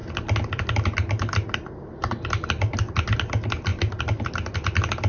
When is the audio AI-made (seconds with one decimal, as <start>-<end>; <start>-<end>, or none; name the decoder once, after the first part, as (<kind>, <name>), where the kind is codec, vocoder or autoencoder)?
none